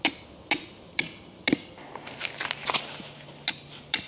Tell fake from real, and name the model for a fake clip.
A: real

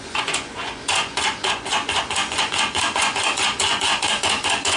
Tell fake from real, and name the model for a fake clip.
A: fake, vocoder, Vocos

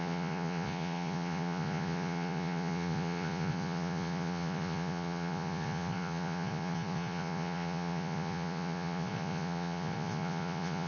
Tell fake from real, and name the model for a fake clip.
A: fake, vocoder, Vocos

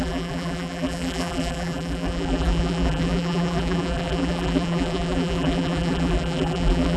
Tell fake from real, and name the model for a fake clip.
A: fake, vocoder, BigVGAN v2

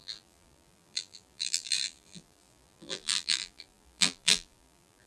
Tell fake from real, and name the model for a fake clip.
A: fake, vocoder, BigVGAN v2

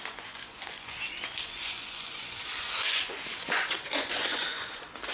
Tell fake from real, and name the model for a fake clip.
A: fake, vocoder, Vocos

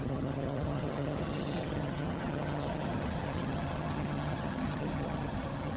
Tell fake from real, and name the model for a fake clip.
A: fake, vocoder, HiFi-GAN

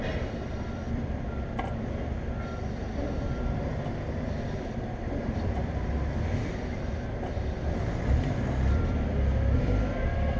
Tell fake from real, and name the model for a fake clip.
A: fake, vocoder, BigVGAN v2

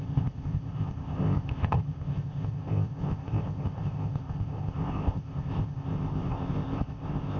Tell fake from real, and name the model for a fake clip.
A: fake, codec, ZipCodec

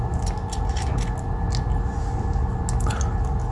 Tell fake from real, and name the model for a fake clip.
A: real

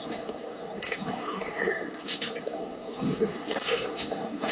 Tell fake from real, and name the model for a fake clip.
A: fake, codec, SNAC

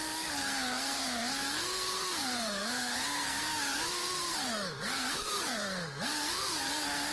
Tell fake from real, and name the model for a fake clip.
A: fake, codec, SNAC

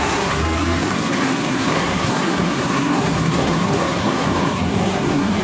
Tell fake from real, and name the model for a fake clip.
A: fake, codec, SNAC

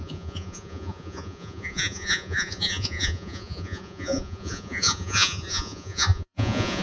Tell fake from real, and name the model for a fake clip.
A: fake, vocoder, Vocos